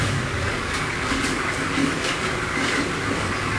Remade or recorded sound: remade